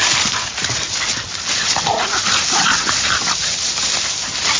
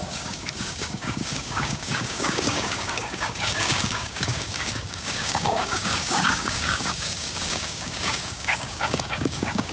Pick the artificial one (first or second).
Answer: second